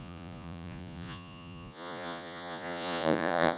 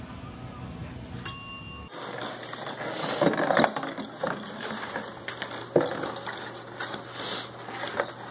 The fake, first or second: first